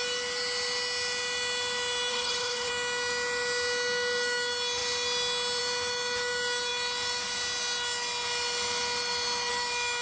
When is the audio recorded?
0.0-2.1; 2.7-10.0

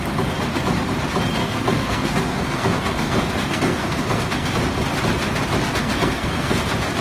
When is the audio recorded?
0.0-1.4; 4.5-5.8; 6.6-7.0

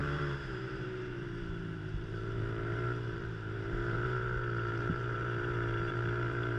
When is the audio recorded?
none

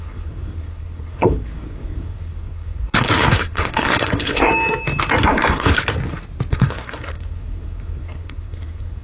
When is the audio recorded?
4.5-5.2; 5.8-6.5

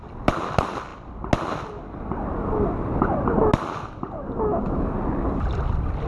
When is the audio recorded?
0.0-6.1

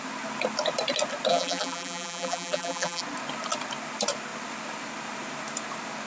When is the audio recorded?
0.0-1.3; 3.0-6.1